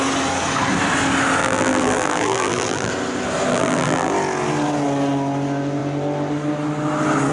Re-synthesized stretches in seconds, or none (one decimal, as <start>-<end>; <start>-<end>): 1.4-2.9; 3.5-4.1